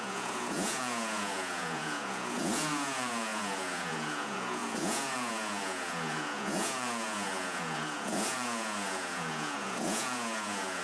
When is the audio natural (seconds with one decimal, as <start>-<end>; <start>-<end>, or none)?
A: none